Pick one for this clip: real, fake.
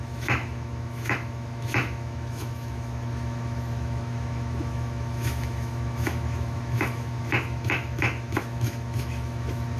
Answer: fake